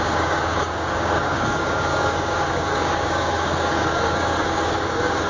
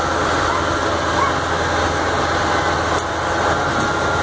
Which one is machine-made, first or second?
first